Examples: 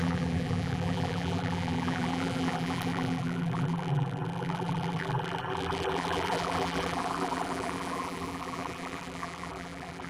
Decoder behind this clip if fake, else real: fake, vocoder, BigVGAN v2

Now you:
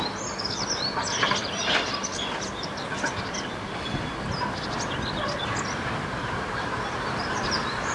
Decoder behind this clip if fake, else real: real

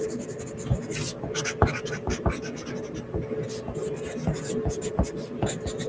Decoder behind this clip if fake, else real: real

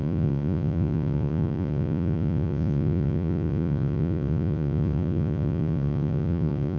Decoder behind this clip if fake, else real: fake, vocoder, Vocos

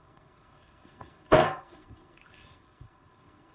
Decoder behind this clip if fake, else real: fake, codec, SNAC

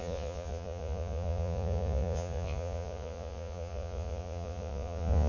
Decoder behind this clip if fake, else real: fake, vocoder, Vocos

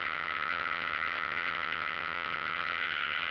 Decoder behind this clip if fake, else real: fake, vocoder, HiFi-GAN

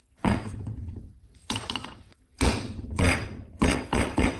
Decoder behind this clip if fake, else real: fake, vocoder, WaveNeXt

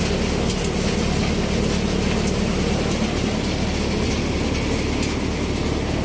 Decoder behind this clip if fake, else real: real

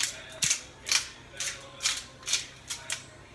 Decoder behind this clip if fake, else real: real